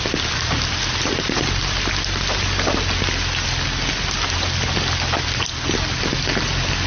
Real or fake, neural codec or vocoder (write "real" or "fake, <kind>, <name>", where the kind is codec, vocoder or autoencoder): real